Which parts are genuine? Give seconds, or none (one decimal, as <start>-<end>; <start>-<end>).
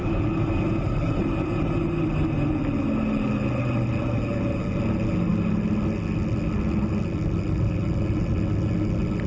0.0-9.3